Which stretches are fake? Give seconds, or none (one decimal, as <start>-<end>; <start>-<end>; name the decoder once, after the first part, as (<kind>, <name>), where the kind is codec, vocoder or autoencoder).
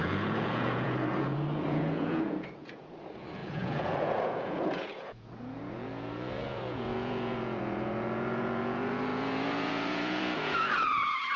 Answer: 0.0-11.4 (vocoder, Vocos)